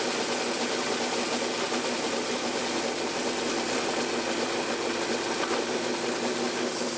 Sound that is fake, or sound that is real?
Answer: real